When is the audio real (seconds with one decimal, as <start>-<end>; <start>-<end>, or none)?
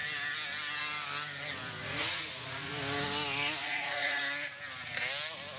0.0-1.8; 2.7-3.6; 4.2-5.6